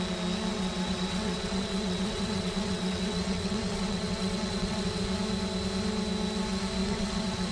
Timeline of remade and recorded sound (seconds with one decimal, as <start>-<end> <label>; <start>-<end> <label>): 0.0-0.5 recorded; 0.5-5.0 remade; 5.0-6.8 recorded; 6.8-7.5 remade